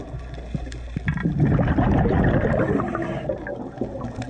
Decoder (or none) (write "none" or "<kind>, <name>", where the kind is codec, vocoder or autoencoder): none